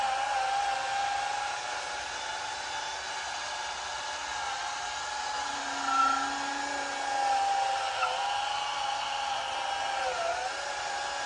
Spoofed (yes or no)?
no